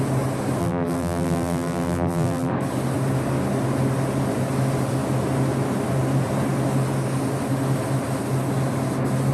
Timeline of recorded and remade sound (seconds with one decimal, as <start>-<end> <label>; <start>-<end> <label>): 0.0-0.6 recorded; 0.6-2.5 remade; 2.5-9.3 recorded